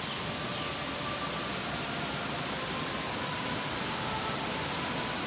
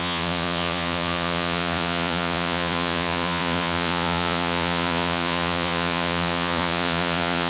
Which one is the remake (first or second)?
second